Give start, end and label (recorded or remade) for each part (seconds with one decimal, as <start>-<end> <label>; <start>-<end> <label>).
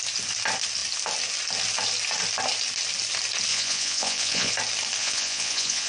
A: 0.0-3.5 recorded; 3.5-4.5 remade; 4.5-5.0 recorded; 5.0-5.9 remade